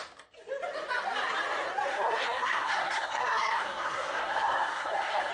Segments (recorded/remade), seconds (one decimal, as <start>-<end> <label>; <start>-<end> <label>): 0.0-1.9 recorded; 1.9-5.3 remade